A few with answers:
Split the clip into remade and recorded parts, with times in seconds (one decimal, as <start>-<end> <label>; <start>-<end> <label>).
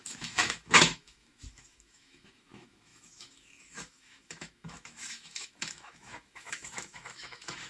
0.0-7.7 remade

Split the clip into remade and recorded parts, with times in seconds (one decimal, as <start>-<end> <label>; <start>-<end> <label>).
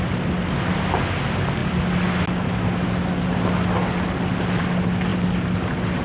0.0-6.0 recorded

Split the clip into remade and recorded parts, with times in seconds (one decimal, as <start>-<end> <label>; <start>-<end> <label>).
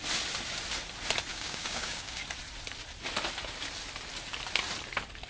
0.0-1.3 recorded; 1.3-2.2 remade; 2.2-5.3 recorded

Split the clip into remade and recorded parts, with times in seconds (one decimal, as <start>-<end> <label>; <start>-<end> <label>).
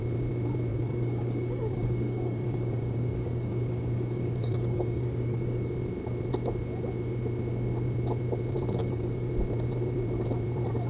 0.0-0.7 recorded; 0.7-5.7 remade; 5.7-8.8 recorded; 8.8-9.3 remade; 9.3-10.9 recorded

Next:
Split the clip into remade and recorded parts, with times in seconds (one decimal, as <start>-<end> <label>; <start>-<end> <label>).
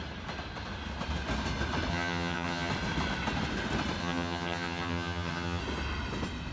0.0-1.9 recorded; 1.9-2.7 remade; 2.7-4.0 recorded; 4.0-5.6 remade; 5.6-6.5 recorded